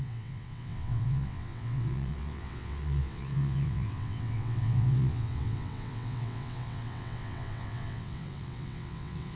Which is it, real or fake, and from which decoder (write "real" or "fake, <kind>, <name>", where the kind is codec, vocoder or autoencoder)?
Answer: fake, vocoder, WaveNeXt